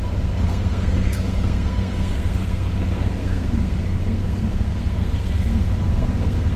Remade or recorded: remade